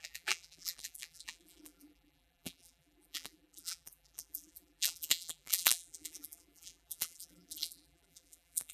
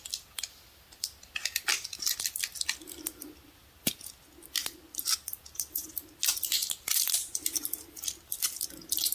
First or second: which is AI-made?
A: first